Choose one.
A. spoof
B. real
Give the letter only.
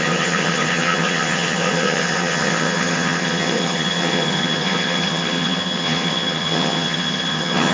A